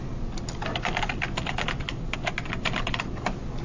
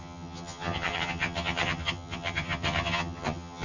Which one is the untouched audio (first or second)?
first